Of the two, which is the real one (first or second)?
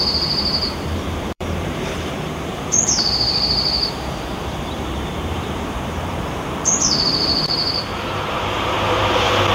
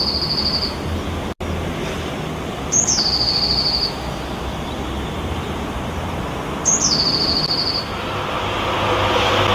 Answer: second